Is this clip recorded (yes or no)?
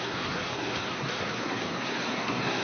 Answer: no